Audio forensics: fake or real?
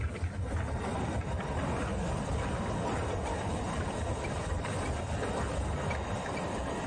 real